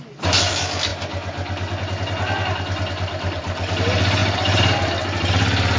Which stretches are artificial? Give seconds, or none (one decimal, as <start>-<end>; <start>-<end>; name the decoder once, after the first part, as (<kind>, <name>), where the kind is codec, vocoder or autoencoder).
none